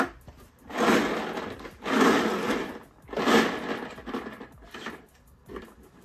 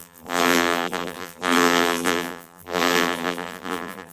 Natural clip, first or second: first